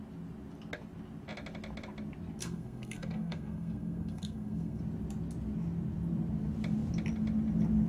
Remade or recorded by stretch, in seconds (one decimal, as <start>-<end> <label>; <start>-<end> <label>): 0.0-2.4 recorded; 2.4-4.8 remade; 4.8-7.9 recorded